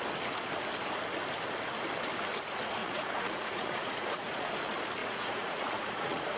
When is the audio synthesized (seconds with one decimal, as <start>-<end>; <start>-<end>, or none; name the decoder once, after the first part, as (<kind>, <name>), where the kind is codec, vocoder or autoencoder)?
2.8-4.5 (vocoder, Vocos); 5.0-6.4

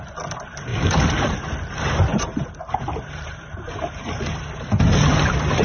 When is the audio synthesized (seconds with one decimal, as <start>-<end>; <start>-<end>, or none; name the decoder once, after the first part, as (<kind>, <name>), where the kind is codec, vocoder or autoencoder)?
0.7-1.5 (vocoder, BigVGAN v2); 2.1-5.6

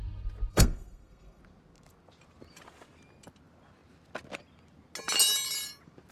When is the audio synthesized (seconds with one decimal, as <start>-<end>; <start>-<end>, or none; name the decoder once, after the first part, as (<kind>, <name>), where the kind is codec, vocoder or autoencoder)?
0.5-1.4 (codec, SNAC)

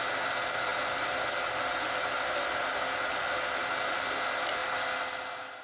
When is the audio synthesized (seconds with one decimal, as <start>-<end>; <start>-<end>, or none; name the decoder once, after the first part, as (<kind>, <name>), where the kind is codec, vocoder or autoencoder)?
none

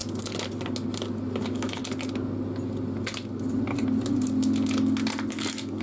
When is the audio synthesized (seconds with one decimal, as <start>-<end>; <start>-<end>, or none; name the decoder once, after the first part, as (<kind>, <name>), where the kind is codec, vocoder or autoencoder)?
1.4-1.8 (codec, DAC); 5.3-5.8